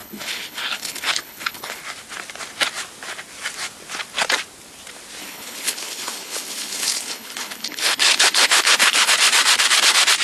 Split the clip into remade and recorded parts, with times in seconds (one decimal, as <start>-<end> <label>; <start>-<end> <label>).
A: 0.0-1.8 remade; 1.8-5.2 recorded; 5.2-9.1 remade; 9.1-10.2 recorded